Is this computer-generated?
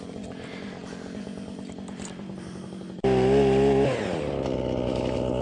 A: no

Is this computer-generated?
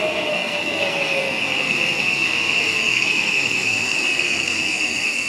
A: yes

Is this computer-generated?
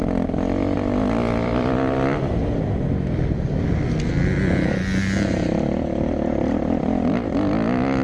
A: no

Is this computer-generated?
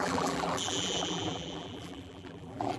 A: yes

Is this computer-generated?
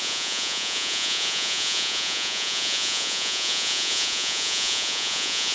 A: yes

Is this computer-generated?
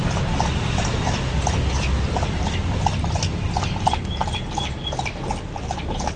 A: no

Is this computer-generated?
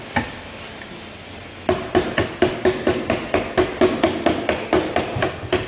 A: no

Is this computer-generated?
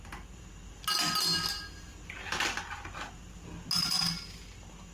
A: no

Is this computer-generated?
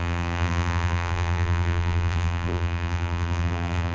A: yes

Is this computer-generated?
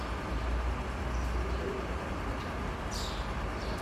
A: no